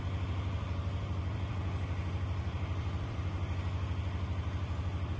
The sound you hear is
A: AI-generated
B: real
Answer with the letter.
A